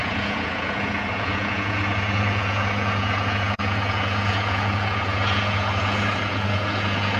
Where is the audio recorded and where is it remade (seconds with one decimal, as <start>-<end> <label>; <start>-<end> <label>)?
0.0-7.2 remade